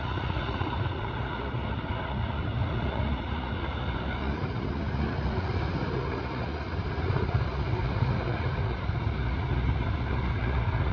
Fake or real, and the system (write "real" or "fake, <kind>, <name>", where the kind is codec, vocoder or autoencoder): fake, vocoder, Vocos